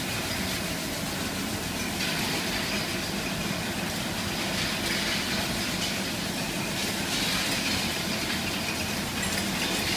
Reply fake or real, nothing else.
real